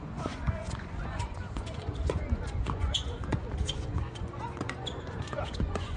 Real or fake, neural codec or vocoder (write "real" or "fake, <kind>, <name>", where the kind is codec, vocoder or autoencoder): fake, vocoder, Vocos